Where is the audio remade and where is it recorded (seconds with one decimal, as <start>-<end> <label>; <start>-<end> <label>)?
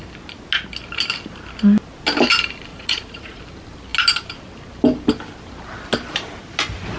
0.0-2.7 recorded; 2.7-3.4 remade; 3.4-7.0 recorded